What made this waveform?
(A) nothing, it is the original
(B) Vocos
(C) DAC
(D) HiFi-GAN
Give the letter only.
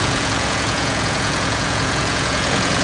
B